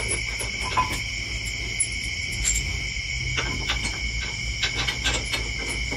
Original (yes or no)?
yes